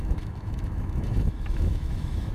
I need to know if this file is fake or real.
fake